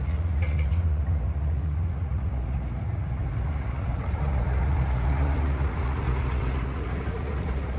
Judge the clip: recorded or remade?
remade